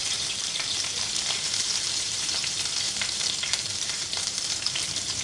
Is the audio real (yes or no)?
no